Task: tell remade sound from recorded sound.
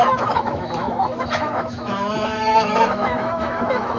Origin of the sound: remade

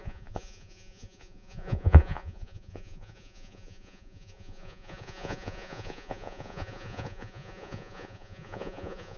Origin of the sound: remade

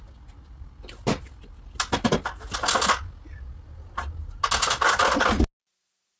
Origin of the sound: recorded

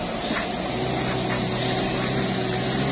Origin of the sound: recorded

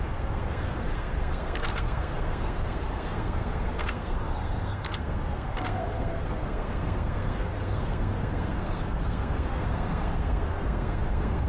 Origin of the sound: remade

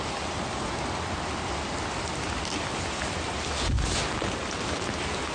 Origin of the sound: recorded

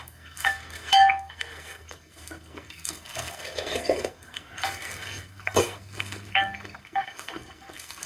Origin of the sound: remade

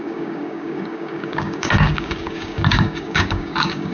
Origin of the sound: remade